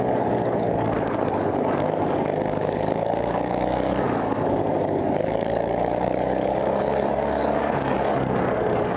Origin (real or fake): fake